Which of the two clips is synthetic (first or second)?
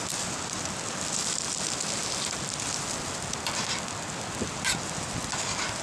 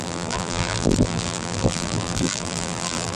second